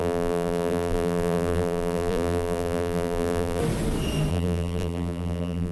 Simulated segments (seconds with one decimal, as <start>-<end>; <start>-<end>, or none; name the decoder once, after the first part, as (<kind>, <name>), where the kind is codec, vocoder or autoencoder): 0.0-3.6 (vocoder, BigVGAN v2); 4.3-5.7